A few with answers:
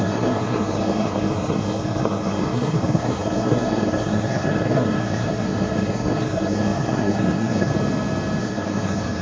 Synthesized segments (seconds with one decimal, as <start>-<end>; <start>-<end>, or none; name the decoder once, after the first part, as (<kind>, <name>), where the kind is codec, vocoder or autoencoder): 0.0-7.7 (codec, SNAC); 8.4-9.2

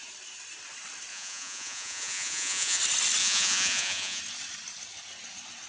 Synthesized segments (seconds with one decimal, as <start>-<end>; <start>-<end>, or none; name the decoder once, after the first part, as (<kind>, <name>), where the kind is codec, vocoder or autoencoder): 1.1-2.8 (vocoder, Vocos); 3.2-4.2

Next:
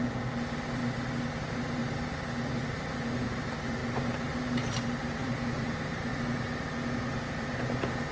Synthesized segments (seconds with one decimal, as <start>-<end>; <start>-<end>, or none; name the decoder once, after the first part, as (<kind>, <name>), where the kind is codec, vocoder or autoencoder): 0.0-0.8 (vocoder, BigVGAN v2); 1.4-1.8; 2.6-6.1; 7.0-8.1

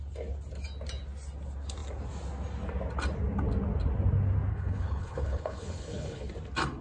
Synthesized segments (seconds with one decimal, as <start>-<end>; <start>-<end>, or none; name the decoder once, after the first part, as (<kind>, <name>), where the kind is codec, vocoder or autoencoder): 4.5-6.3 (codec, HILCodec)

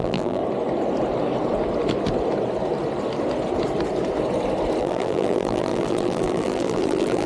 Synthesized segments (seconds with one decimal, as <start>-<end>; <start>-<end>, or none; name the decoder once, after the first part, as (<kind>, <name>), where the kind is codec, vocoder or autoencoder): 0.0-0.4 (vocoder, BigVGAN v2); 4.8-7.3

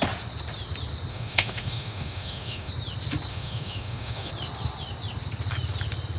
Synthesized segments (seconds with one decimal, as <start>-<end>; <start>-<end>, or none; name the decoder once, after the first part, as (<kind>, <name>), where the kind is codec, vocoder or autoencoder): 1.1-2.7 (autoencoder, DAC-VAE); 3.3-4.3

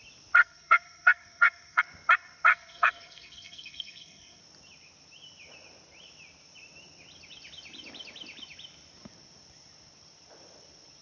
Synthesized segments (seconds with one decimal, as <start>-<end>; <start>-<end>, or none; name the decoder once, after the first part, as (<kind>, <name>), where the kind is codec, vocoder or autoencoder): 0.4-1.8 (codec, SNAC); 2.5-4.4

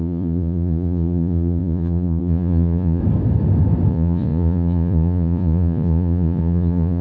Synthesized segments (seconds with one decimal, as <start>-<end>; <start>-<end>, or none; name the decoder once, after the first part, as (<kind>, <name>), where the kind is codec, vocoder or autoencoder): 0.0-3.0 (vocoder, Vocos); 3.9-7.0